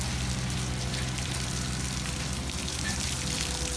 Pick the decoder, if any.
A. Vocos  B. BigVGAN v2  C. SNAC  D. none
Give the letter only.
B